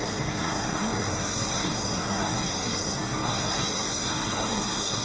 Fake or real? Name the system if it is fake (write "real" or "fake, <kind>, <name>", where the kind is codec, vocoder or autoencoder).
fake, codec, SNAC